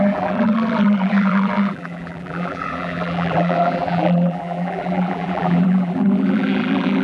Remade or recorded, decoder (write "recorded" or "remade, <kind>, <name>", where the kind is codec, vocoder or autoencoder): remade, vocoder, BigVGAN v2